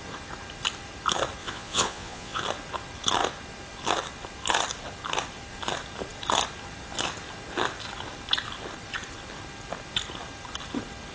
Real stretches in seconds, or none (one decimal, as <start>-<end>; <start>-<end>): 0.0-1.4; 2.4-11.1